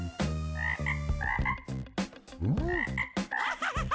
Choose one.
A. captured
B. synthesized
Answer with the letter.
A